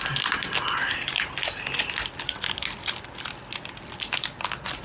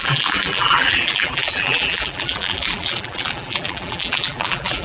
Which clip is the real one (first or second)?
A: first